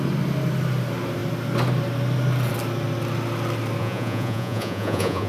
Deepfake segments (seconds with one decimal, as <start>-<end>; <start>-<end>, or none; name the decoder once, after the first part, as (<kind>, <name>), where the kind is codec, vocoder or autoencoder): 3.8-5.3 (vocoder, Vocos)